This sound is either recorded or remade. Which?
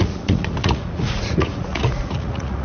remade